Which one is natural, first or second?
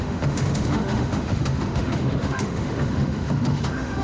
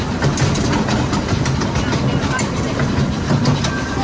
second